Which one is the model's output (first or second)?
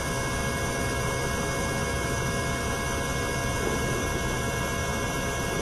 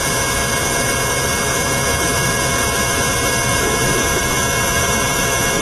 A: second